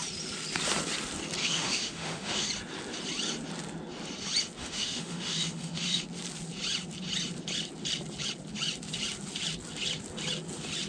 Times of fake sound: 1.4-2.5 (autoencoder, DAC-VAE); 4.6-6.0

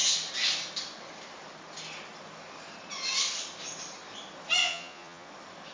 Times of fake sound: 4.6-5.3 (vocoder, Vocos)

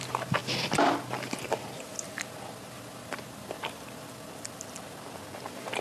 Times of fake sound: none

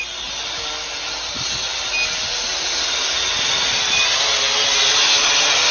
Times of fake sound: none